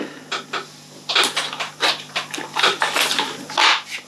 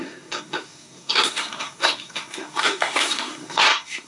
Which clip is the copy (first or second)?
second